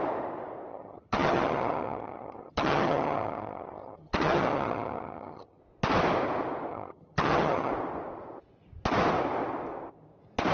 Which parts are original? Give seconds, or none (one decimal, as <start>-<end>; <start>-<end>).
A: 0.0-0.7; 5.6-6.7; 7.7-10.5